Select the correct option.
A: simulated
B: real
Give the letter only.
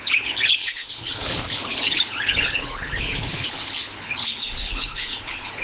A